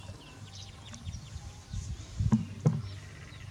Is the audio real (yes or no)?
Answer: yes